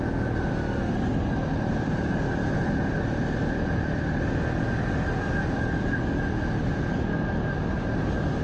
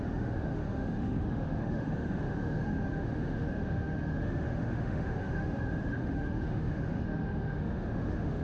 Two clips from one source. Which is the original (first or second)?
first